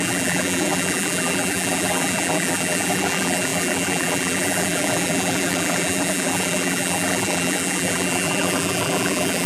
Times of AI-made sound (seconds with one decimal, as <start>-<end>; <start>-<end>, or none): 0.0-9.5